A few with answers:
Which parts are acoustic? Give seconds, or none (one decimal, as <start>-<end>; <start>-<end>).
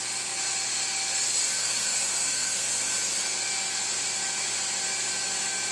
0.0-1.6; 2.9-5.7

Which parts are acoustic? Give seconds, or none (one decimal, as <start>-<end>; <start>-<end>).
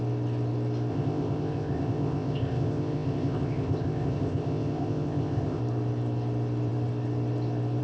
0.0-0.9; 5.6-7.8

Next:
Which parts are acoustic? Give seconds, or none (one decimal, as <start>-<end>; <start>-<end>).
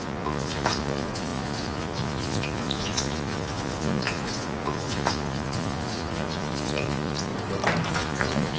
7.3-7.9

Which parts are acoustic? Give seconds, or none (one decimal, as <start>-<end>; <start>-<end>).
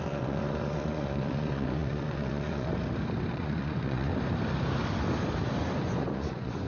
2.7-3.3; 4.1-5.8